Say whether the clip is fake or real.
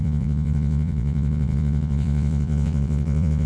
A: fake